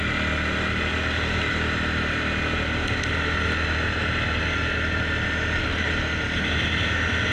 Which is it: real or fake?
real